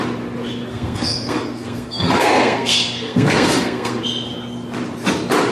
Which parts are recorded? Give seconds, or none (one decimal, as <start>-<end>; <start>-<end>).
0.0-0.7; 4.0-5.5